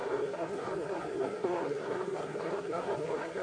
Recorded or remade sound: remade